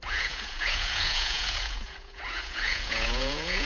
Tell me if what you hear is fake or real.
fake